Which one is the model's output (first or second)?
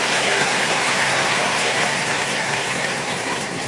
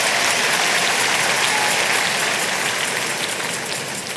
first